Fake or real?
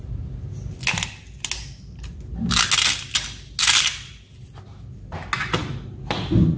real